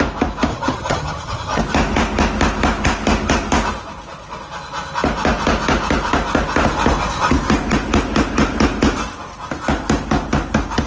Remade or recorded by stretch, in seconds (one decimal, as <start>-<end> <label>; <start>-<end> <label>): 0.0-0.5 recorded; 0.5-1.6 remade; 1.6-10.9 recorded